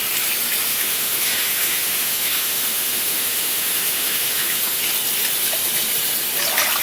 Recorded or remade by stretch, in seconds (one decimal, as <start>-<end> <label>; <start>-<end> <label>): 0.0-0.7 recorded; 0.7-4.8 remade; 4.8-6.8 recorded